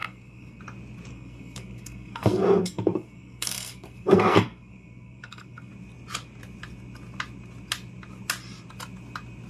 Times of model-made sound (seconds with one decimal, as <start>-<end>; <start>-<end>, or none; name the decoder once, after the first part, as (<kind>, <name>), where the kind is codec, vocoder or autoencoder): 0.0-0.6 (codec, SNAC); 1.1-5.7